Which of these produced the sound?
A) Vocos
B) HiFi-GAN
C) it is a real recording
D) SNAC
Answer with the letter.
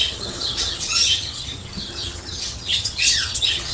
B